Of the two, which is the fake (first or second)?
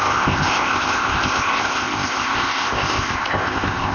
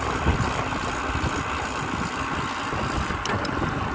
first